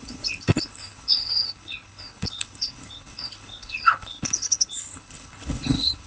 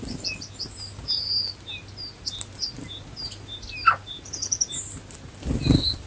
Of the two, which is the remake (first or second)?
first